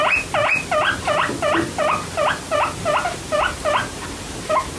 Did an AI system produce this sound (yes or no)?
no